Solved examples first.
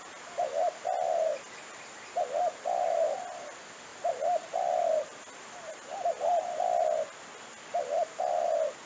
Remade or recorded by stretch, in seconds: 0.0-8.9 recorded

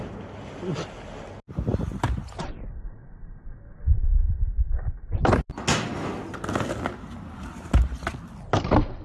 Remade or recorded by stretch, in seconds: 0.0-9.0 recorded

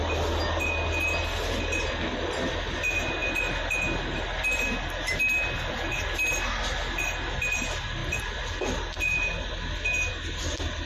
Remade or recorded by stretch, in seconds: 0.0-8.0 recorded; 8.0-9.5 remade; 9.5-10.9 recorded